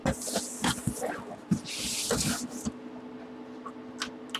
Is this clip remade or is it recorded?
recorded